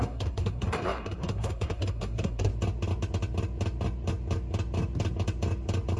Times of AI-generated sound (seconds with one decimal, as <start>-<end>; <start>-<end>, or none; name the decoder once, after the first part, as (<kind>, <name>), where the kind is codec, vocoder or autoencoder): 0.0-2.5 (codec, SNAC)